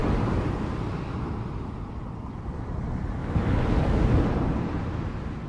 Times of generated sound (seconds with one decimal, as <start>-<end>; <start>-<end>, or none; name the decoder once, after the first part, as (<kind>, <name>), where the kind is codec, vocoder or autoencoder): 3.2-4.2 (codec, DAC)